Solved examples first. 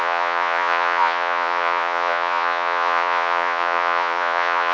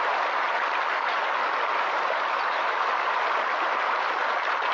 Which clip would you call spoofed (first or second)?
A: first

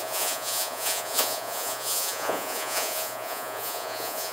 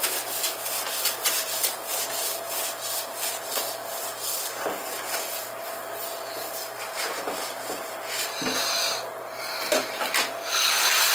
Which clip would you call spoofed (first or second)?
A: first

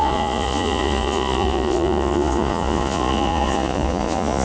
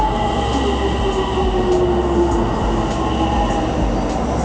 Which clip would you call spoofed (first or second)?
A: first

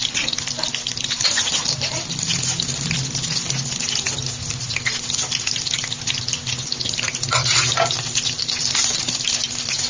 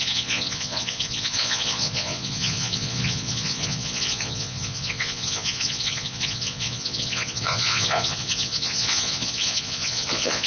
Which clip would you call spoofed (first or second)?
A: second